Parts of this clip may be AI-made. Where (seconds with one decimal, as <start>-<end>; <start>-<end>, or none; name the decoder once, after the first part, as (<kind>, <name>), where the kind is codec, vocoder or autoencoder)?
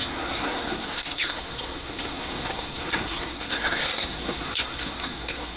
0.0-5.6 (codec, SNAC)